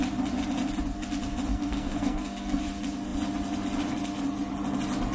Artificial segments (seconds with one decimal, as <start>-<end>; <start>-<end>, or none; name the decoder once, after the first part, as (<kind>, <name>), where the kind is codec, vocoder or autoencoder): 1.5-2.6 (codec, SNAC)